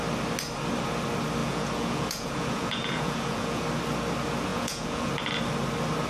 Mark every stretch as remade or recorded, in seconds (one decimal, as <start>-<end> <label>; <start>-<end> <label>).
0.0-1.4 recorded; 1.4-3.6 remade; 3.6-4.5 recorded; 4.5-5.1 remade; 5.1-6.1 recorded